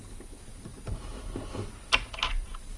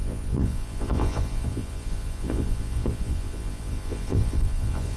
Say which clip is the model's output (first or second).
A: second